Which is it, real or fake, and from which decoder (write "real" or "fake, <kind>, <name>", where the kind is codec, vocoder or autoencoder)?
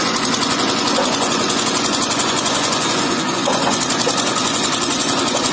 fake, vocoder, Vocos